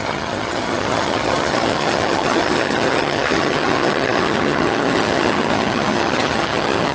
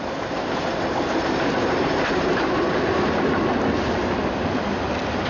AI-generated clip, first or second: first